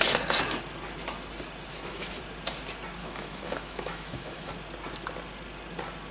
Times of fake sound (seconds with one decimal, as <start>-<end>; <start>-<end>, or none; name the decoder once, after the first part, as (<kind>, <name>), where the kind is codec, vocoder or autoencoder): 1.7-2.2 (autoencoder, DAC-VAE); 3.0-4.5